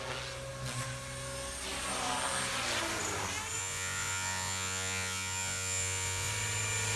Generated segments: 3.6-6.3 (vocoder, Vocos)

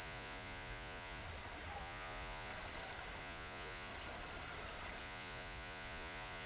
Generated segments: 0.0-1.2 (vocoder, Vocos); 1.8-2.5; 3.2-3.9; 5.0-6.5

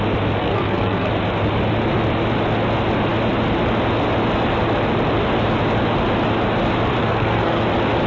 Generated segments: 0.4-1.1 (codec, SNAC); 7.0-7.6

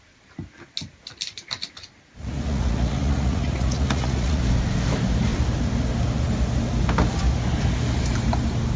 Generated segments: 2.2-4.4 (vocoder, Vocos)

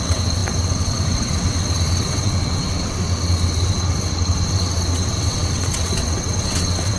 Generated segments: 0.0-7.0 (vocoder, WaveNeXt)